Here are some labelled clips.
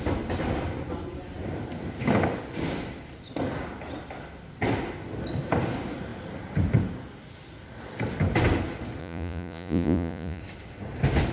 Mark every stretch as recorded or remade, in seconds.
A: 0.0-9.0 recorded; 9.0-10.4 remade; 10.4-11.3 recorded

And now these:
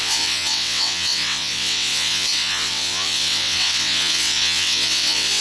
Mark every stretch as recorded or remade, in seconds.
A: 0.0-5.4 remade

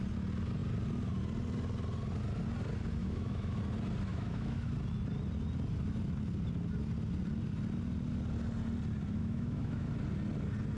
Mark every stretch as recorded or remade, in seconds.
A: 0.0-3.0 recorded; 3.0-3.6 remade; 3.6-4.1 recorded; 4.1-4.7 remade; 4.7-9.2 recorded; 9.2-9.9 remade; 9.9-10.8 recorded

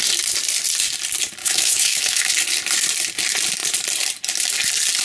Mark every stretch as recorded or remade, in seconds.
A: 0.0-1.4 recorded; 1.4-2.3 remade; 2.3-5.0 recorded

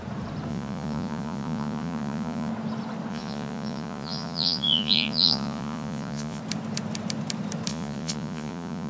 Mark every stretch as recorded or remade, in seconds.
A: 0.0-0.5 recorded; 0.5-2.5 remade; 2.5-3.1 recorded; 3.1-6.4 remade; 6.4-7.7 recorded; 7.7-8.9 remade

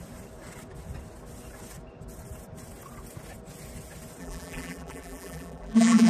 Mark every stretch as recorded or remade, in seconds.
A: 0.0-4.2 recorded; 4.2-6.1 remade

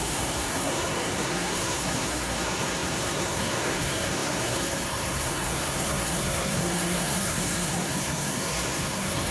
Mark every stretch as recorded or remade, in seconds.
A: 0.0-9.3 remade

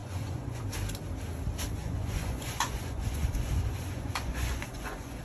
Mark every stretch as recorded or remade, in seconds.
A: 0.0-0.6 remade; 0.6-1.8 recorded; 1.8-5.2 remade